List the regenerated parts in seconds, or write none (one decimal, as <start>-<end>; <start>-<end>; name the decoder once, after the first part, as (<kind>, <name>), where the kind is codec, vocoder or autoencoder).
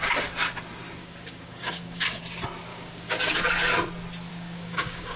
1.0-2.2 (codec, DAC); 2.7-3.4; 4.3-5.2